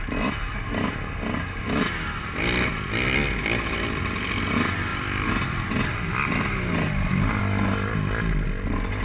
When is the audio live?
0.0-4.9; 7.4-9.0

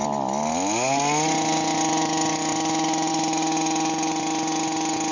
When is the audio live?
0.0-5.1

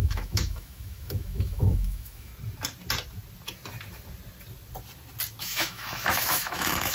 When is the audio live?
2.3-5.4